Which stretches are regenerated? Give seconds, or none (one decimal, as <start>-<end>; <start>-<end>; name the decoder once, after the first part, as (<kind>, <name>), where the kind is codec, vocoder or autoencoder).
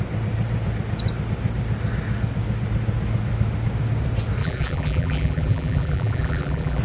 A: 4.4-6.8 (vocoder, BigVGAN v2)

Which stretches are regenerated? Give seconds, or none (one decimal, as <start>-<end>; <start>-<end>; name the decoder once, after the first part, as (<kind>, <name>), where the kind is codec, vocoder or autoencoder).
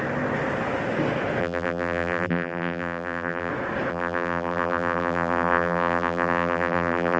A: 1.4-3.5 (vocoder, BigVGAN v2); 3.9-7.2